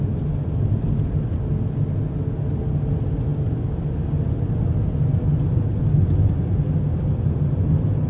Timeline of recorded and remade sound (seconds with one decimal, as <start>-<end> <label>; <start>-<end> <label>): 0.0-8.1 recorded